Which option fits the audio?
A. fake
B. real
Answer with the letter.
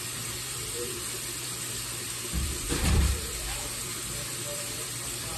A